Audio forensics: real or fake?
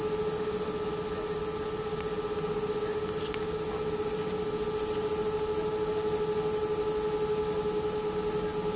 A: real